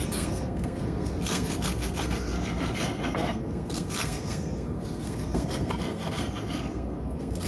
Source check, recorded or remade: remade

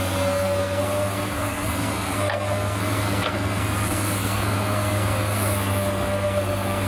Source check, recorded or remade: remade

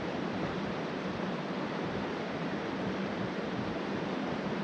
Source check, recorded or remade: remade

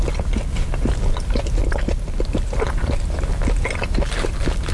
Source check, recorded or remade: recorded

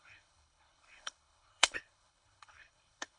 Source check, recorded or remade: remade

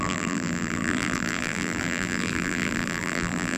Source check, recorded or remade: remade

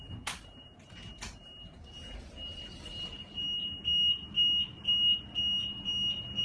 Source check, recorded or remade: recorded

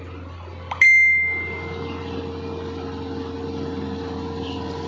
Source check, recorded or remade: recorded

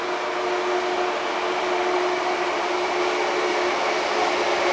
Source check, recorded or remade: recorded